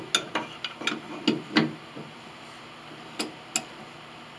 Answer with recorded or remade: recorded